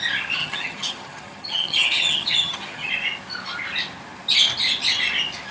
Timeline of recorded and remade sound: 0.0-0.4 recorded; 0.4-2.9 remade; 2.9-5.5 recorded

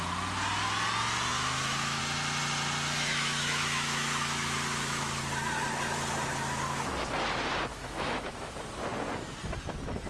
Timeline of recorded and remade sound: 0.0-1.3 recorded; 1.3-2.0 remade; 2.0-3.1 recorded; 3.1-5.2 remade; 5.2-7.7 recorded; 7.7-8.5 remade; 8.5-10.1 recorded

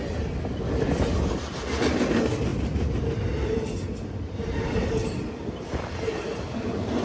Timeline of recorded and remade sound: 0.0-7.0 recorded

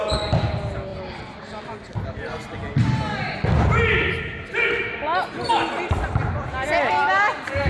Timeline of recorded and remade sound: 0.0-7.7 recorded